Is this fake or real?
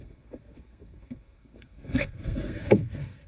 fake